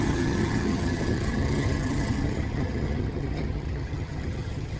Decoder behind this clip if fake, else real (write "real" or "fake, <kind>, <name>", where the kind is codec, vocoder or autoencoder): fake, vocoder, HiFi-GAN